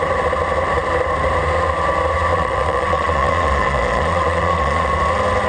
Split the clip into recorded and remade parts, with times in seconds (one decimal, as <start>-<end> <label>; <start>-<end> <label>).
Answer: 0.0-2.3 recorded; 2.3-4.9 remade; 4.9-5.5 recorded